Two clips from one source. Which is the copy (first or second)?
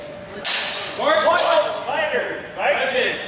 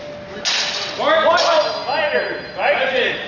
first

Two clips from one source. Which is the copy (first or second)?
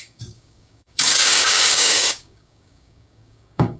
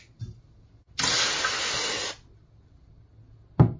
first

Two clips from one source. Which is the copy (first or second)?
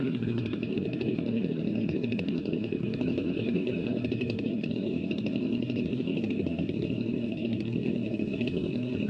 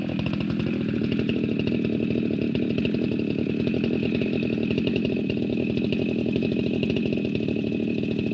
first